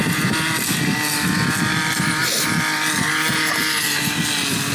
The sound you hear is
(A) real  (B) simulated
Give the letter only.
A